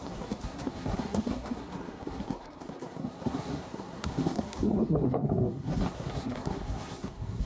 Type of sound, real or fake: fake